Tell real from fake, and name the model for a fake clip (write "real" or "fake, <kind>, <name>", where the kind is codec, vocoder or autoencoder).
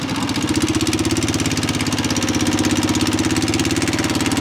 real